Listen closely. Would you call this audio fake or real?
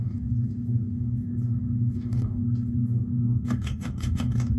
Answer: fake